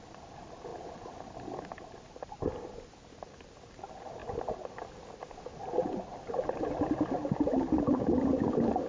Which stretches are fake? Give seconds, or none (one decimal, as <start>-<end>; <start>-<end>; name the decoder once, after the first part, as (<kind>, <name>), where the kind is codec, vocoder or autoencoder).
none